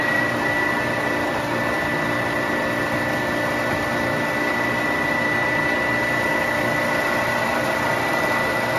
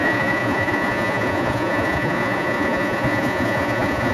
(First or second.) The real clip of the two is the first